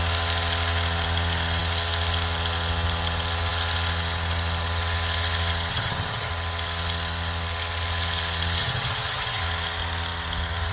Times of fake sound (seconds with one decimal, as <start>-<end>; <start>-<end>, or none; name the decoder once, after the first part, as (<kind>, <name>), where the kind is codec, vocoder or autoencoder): 5.7-6.3 (vocoder, HiFi-GAN); 8.6-9.4